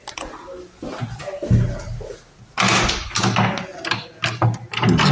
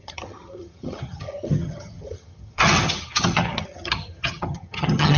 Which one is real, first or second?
first